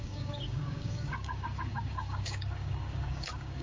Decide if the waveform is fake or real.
fake